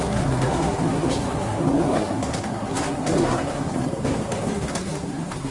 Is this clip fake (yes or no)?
yes